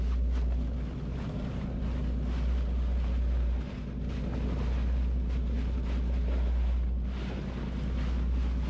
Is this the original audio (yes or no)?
yes